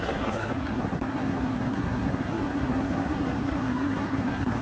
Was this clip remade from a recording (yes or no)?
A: yes